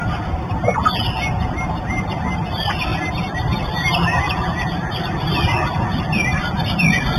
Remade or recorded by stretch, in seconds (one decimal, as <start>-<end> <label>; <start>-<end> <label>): 0.0-7.2 recorded

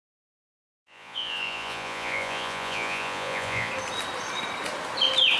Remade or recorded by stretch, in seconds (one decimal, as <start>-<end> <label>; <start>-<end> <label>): 0.0-0.5 recorded; 0.5-3.7 remade; 3.7-5.4 recorded